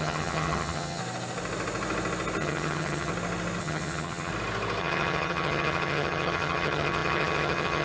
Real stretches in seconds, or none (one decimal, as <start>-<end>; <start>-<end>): 1.0-2.4; 3.1-3.6; 4.3-4.8